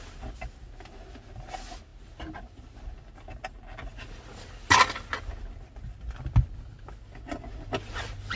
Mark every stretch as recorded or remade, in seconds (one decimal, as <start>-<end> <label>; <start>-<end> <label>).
0.0-8.4 recorded